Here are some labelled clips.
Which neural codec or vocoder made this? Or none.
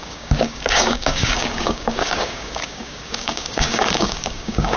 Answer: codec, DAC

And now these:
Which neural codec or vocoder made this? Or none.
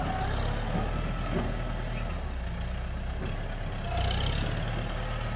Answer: none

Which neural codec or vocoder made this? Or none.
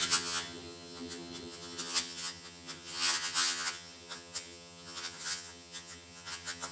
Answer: vocoder, HiFi-GAN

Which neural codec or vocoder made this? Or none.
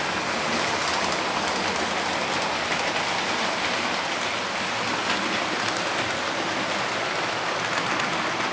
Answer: none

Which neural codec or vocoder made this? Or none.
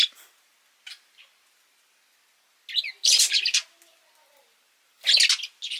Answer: none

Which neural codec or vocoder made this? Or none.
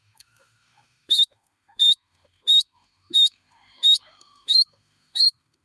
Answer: autoencoder, DAC-VAE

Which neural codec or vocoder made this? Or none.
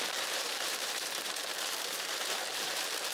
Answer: vocoder, BigVGAN v2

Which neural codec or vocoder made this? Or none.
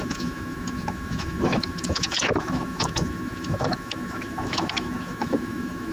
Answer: autoencoder, DAC-VAE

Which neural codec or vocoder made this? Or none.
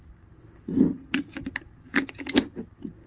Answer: none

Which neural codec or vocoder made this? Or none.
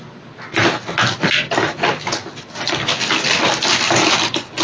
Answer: none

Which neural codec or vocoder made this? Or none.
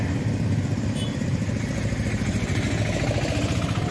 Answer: none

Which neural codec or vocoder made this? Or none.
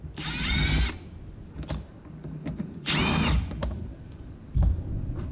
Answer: none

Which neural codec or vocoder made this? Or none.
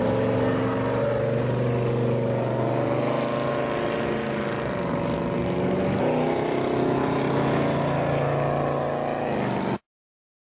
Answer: none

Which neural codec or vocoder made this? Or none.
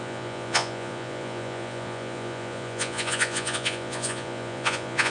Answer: vocoder, Vocos